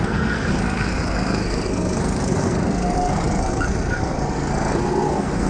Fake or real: fake